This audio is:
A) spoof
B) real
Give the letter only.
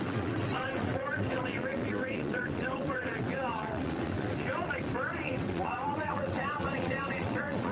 A